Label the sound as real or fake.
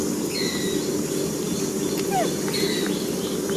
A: real